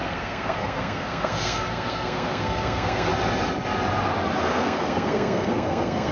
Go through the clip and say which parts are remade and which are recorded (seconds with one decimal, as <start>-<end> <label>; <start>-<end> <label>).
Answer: 0.0-3.1 remade; 3.1-4.4 recorded; 4.4-6.1 remade